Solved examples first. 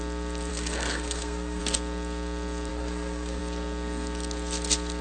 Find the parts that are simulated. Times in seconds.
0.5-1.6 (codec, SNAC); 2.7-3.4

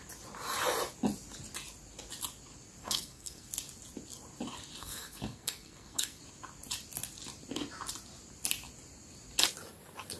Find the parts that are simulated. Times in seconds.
2.8-3.5 (codec, SNAC); 4.8-6.2

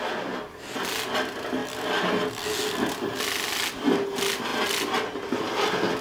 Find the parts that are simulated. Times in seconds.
none

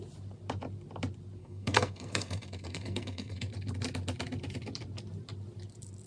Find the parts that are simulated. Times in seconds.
1.4-3.5 (codec, SNAC)

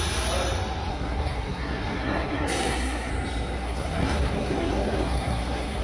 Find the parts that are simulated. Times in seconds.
0.9-3.1 (codec, SNAC); 3.6-5.8

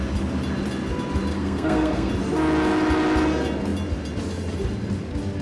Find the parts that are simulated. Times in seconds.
1.3-2.1 (codec, SNAC)

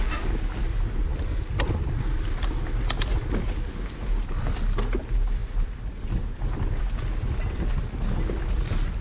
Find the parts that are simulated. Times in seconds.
none

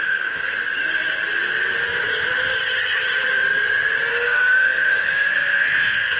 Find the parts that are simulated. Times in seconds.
0.0-0.6 (codec, SNAC); 4.1-6.2